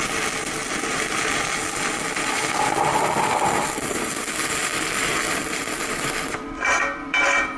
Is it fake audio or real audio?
fake